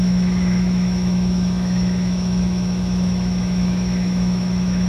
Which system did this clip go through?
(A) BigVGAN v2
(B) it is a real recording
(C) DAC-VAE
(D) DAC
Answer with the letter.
C